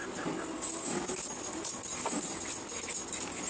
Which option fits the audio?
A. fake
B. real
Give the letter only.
B